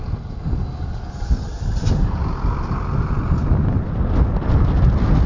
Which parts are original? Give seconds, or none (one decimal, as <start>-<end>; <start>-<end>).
0.0-5.3